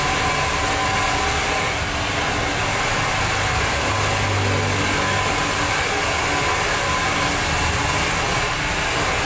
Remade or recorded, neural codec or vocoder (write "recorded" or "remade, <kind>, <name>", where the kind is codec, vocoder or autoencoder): recorded